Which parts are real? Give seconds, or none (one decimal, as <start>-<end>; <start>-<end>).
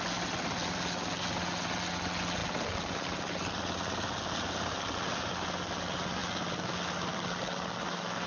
0.0-8.3